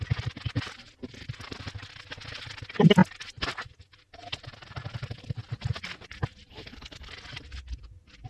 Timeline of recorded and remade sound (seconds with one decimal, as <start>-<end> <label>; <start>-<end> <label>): 0.0-6.5 recorded; 6.5-7.1 remade; 7.1-8.3 recorded